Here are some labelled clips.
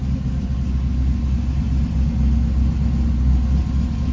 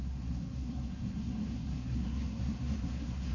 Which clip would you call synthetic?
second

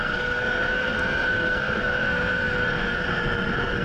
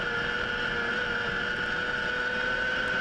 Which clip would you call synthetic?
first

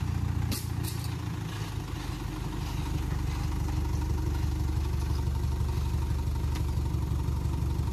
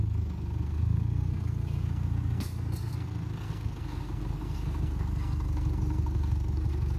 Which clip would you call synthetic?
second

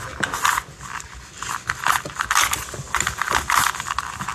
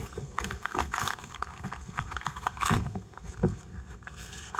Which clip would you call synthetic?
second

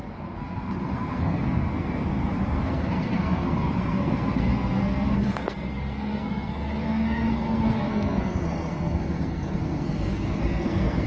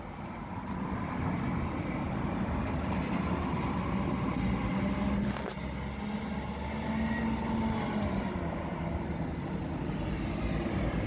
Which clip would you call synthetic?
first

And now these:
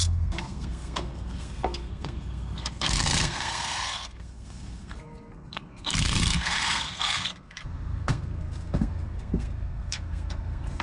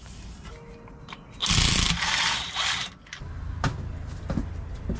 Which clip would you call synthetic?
first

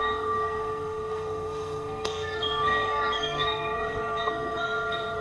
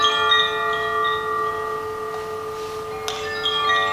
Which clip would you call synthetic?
first